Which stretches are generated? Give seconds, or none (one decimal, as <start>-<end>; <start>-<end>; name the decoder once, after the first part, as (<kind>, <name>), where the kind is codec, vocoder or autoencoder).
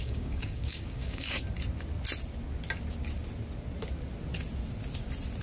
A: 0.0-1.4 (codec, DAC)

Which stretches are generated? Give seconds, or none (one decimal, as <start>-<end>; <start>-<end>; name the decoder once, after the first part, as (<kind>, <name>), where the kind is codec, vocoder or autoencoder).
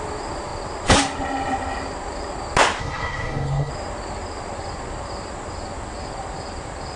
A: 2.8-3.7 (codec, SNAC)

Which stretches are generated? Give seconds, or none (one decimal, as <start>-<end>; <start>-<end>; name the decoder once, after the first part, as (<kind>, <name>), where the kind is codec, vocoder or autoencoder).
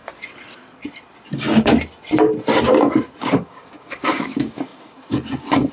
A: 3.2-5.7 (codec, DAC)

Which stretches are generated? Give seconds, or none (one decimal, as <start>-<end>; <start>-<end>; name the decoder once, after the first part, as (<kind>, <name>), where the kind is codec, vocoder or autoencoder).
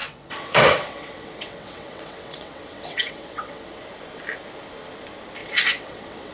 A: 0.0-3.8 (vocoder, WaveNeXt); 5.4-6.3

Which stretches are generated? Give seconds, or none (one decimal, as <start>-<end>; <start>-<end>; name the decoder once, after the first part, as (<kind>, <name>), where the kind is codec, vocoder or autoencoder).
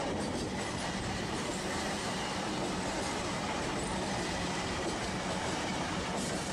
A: 0.0-6.5 (vocoder, BigVGAN v2)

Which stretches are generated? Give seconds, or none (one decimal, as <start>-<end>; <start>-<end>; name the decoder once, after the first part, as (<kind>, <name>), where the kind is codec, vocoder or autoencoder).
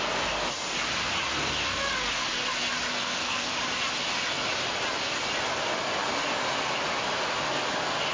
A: 3.0-3.5 (codec, SNAC)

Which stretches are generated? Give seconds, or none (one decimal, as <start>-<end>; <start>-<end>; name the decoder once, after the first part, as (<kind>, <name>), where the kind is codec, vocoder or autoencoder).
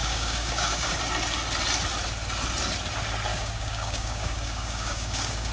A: 0.0-0.9 (codec, DAC); 3.3-5.5